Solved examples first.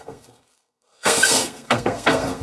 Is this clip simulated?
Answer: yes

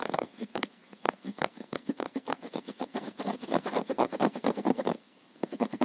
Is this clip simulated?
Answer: yes